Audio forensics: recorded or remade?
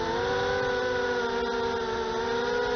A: recorded